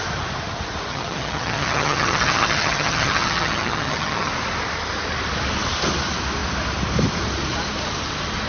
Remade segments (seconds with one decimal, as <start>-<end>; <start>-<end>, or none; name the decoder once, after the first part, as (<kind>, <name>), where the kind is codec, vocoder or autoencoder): 0.9-4.3 (vocoder, HiFi-GAN)